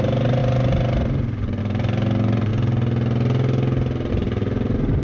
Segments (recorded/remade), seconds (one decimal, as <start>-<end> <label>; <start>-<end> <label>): 0.0-0.4 remade; 0.4-1.6 recorded; 1.6-2.5 remade; 2.5-4.1 recorded; 4.1-5.0 remade